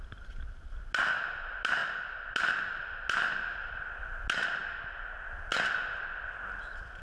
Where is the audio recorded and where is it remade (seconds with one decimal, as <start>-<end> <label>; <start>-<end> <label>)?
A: 0.0-7.0 recorded